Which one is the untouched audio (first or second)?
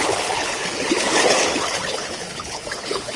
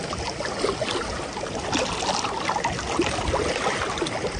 second